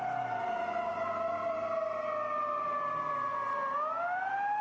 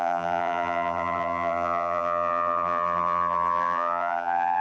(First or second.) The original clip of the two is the first